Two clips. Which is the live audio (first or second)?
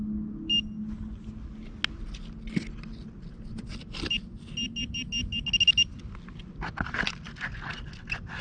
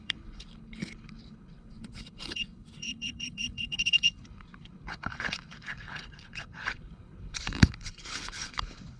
first